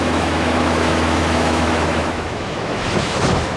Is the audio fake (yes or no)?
yes